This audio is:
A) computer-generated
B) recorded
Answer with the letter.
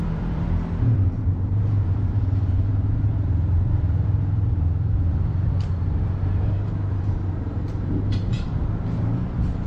A